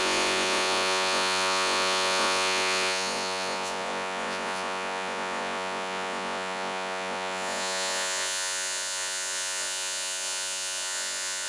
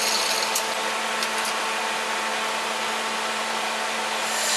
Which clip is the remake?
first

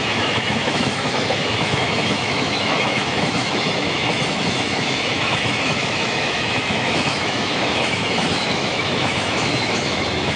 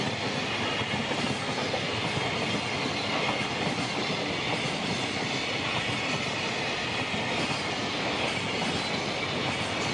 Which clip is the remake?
first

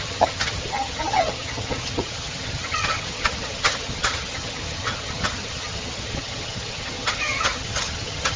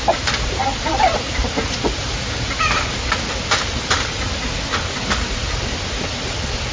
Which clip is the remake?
first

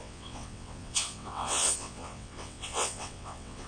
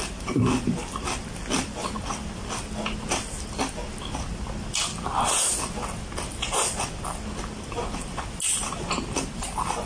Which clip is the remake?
first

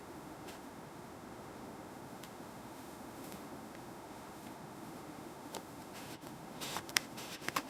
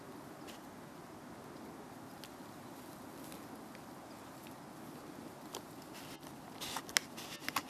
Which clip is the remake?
first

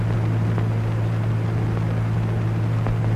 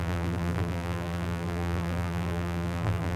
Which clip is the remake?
second